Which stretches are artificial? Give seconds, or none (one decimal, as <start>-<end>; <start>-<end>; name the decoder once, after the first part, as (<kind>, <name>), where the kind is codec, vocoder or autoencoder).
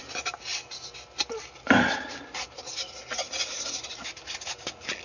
none